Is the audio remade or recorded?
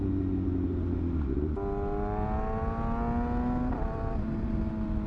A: recorded